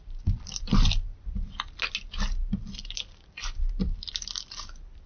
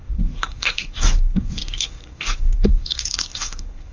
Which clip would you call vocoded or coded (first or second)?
second